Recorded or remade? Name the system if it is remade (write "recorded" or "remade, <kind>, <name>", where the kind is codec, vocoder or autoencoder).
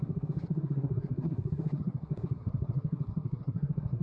remade, codec, SNAC